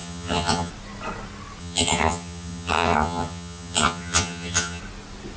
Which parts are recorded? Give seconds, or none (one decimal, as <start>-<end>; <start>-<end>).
0.7-1.6; 4.8-5.4